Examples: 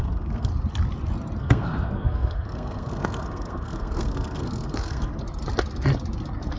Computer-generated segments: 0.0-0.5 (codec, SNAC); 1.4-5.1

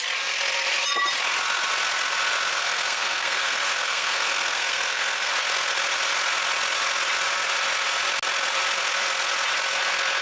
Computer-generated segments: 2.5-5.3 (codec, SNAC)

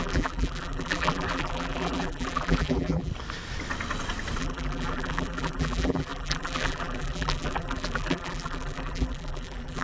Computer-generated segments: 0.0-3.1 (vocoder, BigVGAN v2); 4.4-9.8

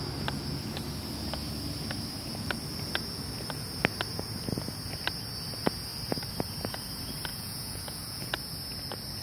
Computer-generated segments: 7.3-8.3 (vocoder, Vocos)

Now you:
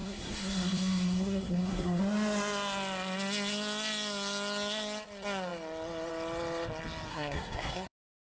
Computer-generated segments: 0.0-2.0 (codec, SNAC); 7.1-8.3

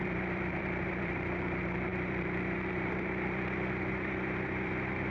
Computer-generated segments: 0.0-5.1 (vocoder, BigVGAN v2)

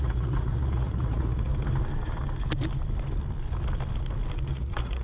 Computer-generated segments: 0.0-1.5 (vocoder, Vocos); 4.5-5.0